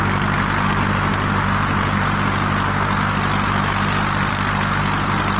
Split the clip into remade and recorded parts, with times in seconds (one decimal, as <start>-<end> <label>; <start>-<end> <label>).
0.0-5.4 recorded